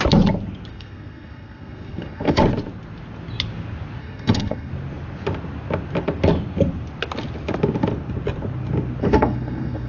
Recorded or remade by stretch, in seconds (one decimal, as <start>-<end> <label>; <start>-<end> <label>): 0.0-0.7 recorded; 0.7-2.4 remade; 2.4-4.0 recorded; 4.0-4.7 remade; 4.7-9.0 recorded; 9.0-9.9 remade